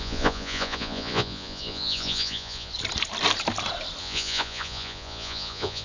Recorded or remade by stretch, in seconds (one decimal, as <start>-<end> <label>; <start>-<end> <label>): 0.0-2.7 remade; 2.7-4.0 recorded; 4.0-5.8 remade